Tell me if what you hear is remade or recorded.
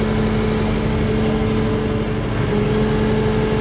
recorded